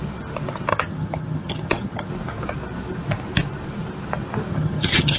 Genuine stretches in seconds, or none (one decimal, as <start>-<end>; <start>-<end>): 0.0-0.7; 2.1-4.5